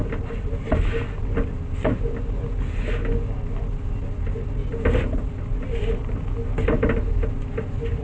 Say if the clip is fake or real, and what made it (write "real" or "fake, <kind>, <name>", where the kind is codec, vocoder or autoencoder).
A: real